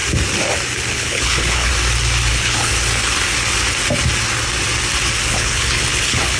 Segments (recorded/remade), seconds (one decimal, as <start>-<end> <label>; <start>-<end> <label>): 0.0-0.9 recorded; 0.9-1.7 remade; 1.7-2.3 recorded; 2.3-2.7 remade; 2.7-5.3 recorded; 5.3-6.4 remade